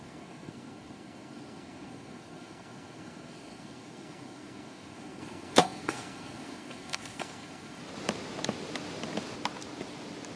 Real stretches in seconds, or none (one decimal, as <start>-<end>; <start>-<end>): 7.8-10.4